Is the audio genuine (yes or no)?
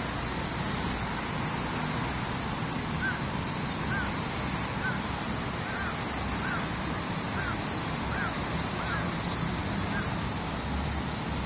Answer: yes